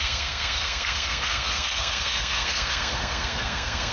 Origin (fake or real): fake